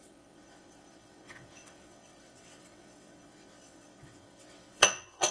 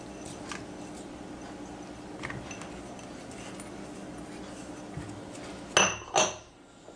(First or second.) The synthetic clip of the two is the first